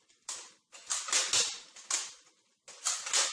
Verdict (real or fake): real